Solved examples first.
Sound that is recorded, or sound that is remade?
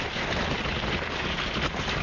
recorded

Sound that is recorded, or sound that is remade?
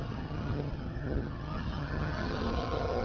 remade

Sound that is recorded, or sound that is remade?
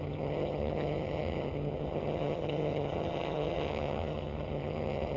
remade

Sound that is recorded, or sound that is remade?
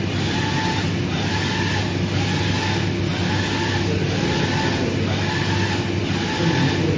recorded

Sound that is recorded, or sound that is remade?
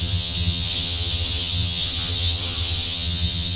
remade